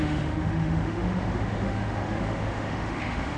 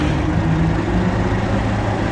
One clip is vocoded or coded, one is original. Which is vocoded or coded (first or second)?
first